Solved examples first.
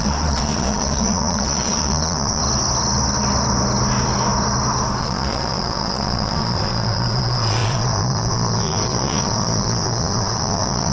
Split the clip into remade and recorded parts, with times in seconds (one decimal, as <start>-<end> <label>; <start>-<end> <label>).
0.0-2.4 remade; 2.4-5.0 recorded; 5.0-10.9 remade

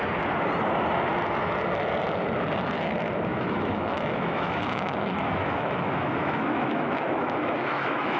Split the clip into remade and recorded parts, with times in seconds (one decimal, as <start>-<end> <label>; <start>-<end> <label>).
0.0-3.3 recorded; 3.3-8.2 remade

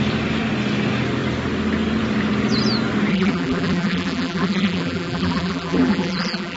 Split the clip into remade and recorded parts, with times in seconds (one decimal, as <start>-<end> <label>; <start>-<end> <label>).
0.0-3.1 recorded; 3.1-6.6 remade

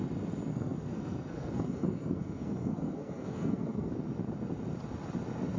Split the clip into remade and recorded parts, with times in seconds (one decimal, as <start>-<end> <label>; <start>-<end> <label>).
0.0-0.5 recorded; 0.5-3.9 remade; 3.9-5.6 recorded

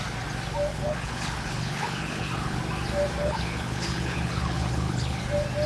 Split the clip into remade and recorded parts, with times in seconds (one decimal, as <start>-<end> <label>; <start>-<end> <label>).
0.0-0.7 recorded; 0.7-2.6 remade; 2.6-3.2 recorded; 3.2-5.2 remade; 5.2-5.7 recorded

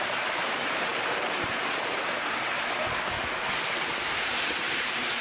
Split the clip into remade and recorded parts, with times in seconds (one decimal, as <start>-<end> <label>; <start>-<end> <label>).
0.0-0.9 remade; 0.9-4.0 recorded; 4.0-5.2 remade